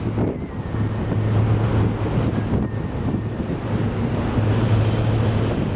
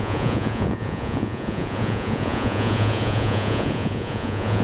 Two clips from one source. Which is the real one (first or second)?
first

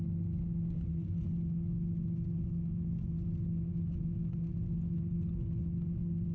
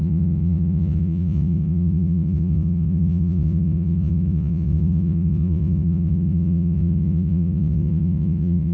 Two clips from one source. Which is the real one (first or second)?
first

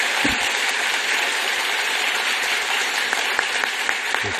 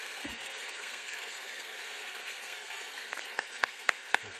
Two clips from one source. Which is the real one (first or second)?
first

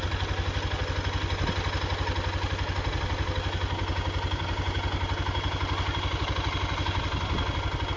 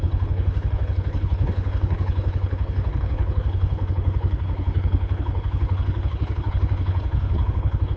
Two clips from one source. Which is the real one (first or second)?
first